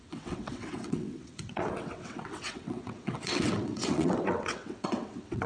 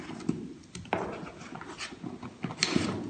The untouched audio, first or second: second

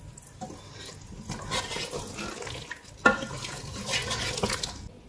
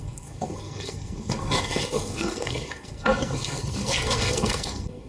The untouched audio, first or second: first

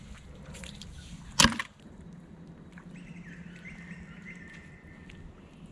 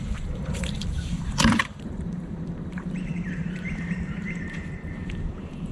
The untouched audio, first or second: first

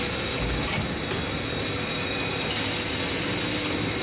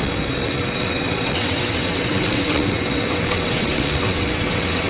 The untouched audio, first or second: first